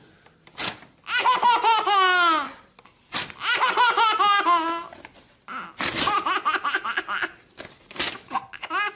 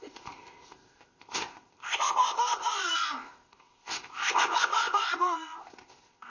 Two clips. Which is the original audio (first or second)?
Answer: first